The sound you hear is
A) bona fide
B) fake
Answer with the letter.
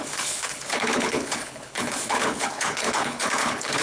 B